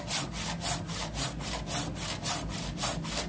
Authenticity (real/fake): real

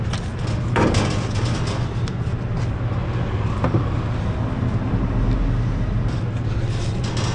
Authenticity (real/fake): real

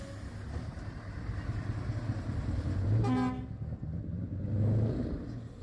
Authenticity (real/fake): real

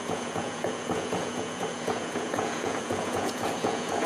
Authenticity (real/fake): fake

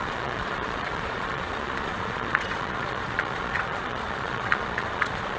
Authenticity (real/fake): fake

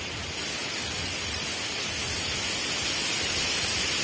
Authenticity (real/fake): real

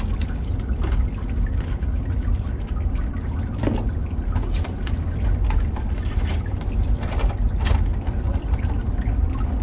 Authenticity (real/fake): real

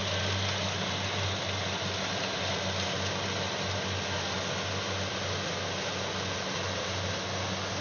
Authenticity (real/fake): real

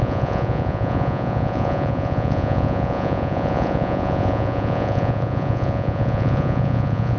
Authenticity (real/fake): fake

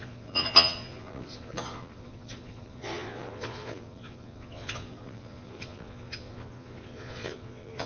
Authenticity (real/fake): fake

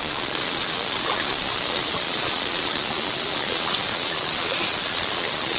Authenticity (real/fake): fake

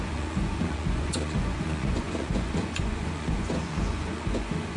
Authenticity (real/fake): fake